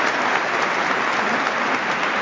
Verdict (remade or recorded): recorded